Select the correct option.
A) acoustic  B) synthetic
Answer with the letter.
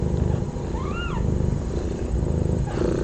A